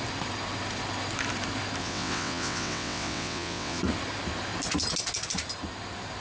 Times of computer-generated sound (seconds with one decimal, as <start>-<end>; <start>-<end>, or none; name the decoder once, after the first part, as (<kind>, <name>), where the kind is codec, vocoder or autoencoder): 1.8-3.8 (vocoder, WaveNeXt)